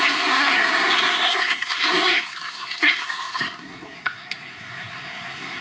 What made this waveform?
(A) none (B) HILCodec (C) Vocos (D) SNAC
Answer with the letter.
D